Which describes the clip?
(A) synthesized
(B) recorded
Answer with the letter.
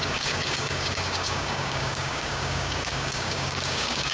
A